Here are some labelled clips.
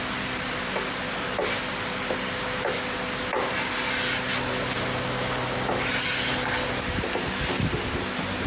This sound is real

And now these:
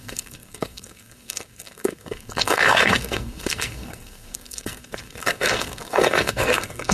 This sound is fake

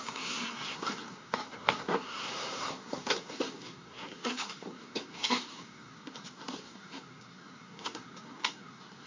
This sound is fake